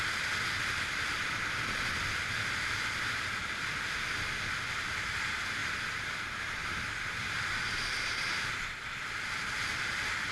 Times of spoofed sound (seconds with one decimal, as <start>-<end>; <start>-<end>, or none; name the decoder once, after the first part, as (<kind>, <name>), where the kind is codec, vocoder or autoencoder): 5.6-6.8 (vocoder, BigVGAN v2)